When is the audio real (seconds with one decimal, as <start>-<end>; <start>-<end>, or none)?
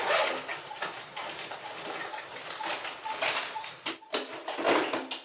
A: 0.0-5.2